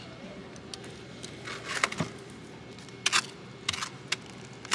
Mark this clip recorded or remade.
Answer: recorded